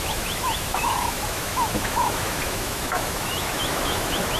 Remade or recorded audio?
remade